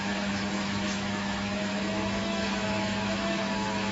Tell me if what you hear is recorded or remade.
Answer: remade